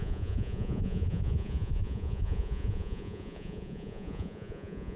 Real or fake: fake